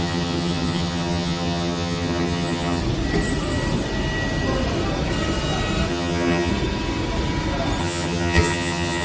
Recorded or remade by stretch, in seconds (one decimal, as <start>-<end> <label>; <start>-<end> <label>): 0.0-2.8 remade; 2.8-5.9 recorded; 5.9-6.5 remade; 6.5-7.8 recorded; 7.8-9.0 remade